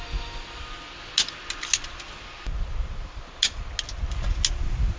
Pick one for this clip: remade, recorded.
recorded